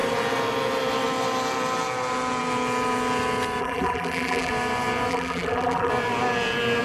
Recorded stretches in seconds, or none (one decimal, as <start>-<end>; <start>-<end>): 0.0-3.6; 4.5-5.1; 5.9-6.8